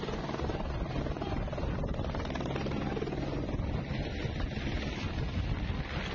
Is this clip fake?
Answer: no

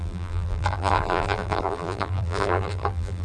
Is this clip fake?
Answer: yes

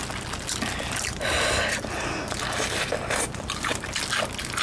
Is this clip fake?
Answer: no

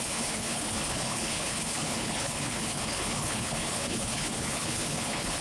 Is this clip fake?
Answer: yes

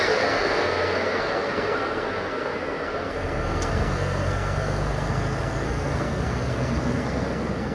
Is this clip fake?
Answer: yes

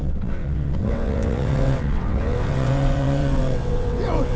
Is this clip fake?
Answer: yes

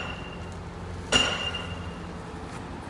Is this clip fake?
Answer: no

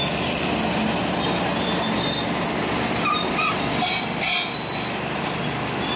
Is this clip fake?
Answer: no